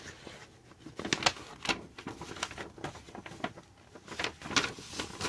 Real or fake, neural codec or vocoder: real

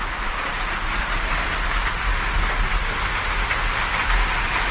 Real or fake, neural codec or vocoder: real